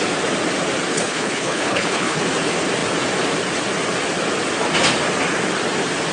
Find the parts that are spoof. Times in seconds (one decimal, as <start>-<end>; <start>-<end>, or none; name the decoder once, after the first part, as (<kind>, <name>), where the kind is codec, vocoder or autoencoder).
0.9-2.2 (codec, HILCodec)